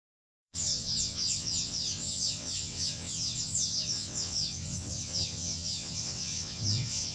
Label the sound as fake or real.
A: fake